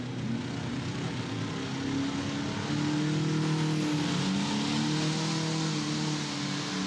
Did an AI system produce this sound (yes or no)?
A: no